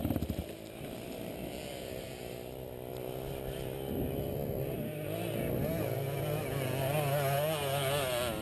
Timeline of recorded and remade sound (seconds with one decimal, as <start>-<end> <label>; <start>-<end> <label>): 0.0-8.4 recorded